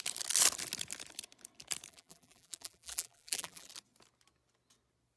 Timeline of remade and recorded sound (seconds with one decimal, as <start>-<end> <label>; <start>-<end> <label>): 0.0-1.9 recorded; 1.9-3.7 remade; 3.7-5.2 recorded